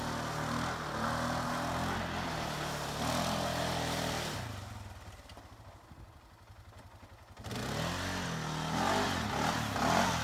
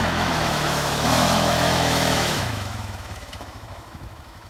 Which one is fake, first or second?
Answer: second